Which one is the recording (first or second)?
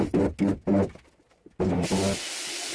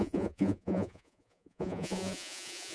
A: first